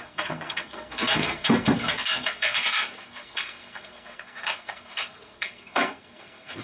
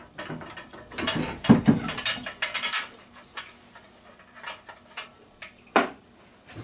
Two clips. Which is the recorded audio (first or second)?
second